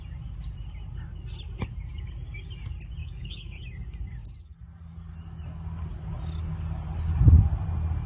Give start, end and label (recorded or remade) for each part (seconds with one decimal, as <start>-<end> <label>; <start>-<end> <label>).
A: 0.0-3.0 recorded; 3.0-3.6 remade; 3.6-8.1 recorded